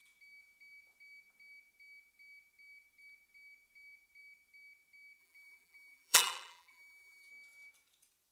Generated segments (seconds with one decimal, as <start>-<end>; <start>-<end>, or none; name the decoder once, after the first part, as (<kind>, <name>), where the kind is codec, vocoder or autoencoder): 5.2-7.3 (vocoder, BigVGAN v2)